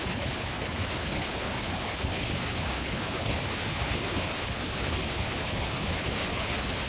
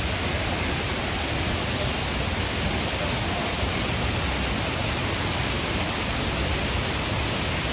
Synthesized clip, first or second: first